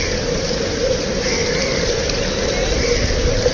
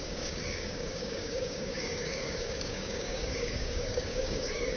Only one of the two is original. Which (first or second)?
first